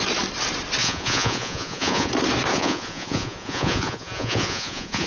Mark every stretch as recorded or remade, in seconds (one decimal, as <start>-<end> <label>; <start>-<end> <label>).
0.0-0.8 recorded; 0.8-2.1 remade; 2.1-2.5 recorded; 2.5-5.1 remade